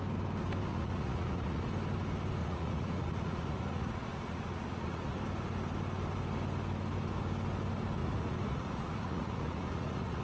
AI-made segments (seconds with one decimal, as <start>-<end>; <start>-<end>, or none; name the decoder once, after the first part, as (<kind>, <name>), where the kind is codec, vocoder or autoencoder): 0.7-1.6 (vocoder, Vocos); 2.4-5.2; 8.0-10.2